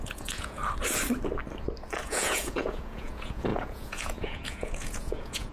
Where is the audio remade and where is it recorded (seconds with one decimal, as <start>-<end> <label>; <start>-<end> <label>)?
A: 0.0-0.6 remade; 0.6-2.0 recorded; 2.0-5.5 remade